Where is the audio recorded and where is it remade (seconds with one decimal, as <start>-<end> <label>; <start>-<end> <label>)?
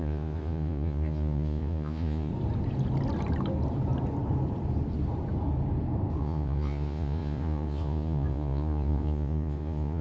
0.0-2.3 remade; 2.3-6.2 recorded; 6.2-10.0 remade